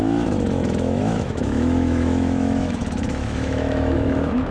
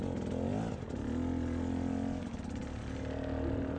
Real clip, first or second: second